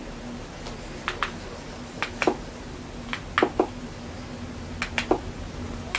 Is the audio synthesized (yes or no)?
no